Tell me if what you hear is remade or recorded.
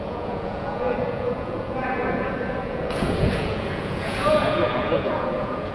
remade